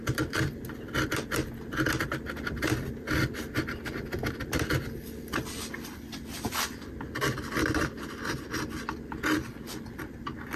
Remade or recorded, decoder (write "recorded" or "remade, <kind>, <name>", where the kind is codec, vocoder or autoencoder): recorded